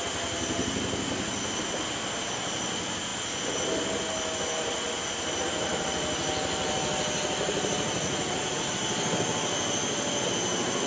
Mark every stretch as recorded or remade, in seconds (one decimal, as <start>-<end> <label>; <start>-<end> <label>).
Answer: 0.0-8.0 recorded; 8.0-8.7 remade; 8.7-10.9 recorded